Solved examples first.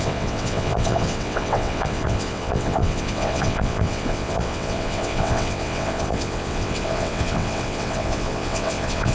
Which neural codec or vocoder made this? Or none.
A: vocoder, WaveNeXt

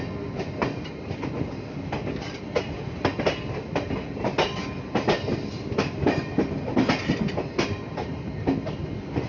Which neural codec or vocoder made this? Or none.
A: none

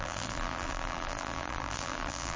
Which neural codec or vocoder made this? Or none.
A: vocoder, BigVGAN v2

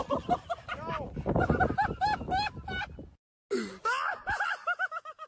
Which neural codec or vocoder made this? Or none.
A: none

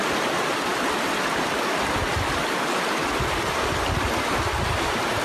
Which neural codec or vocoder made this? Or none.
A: vocoder, BigVGAN v2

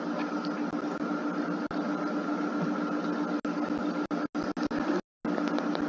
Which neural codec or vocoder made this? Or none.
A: none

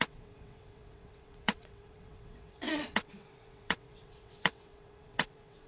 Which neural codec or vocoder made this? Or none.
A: vocoder, WaveNeXt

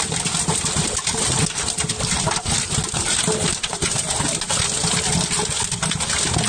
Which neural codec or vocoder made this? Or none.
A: none